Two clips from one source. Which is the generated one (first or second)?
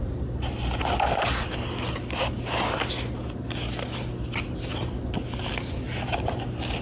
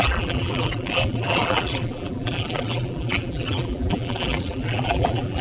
second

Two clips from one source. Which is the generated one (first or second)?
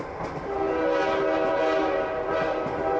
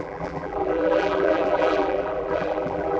second